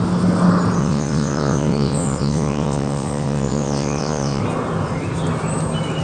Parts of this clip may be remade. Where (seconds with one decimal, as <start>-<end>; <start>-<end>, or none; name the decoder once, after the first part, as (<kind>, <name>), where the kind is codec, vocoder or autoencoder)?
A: 0.8-4.4 (vocoder, WaveNeXt)